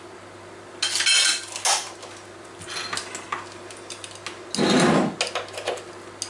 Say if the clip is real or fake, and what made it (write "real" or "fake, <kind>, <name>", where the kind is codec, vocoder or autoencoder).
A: real